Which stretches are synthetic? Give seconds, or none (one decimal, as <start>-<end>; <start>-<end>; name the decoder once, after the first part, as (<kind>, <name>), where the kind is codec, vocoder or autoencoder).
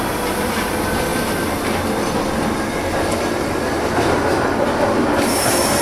none